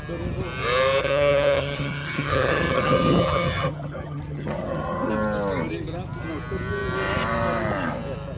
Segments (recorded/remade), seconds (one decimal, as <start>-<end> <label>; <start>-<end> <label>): 0.0-1.0 recorded; 1.0-5.1 remade; 5.1-8.4 recorded